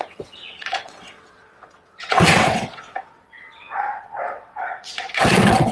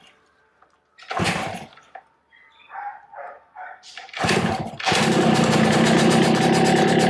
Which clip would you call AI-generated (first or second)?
first